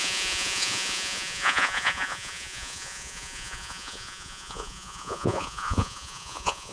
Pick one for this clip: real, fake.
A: fake